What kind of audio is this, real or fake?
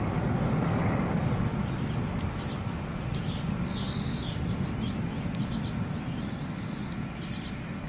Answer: real